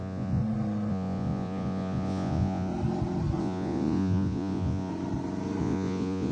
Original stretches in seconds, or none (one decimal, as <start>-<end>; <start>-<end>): 0.4-0.9; 2.7-3.4; 4.9-5.6